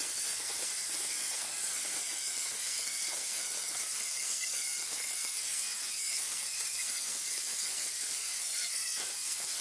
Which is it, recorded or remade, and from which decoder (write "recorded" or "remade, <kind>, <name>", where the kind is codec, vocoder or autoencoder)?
remade, codec, SNAC